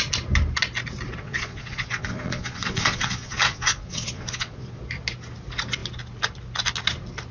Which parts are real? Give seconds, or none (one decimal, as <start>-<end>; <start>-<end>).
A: 0.0-1.2; 4.8-7.3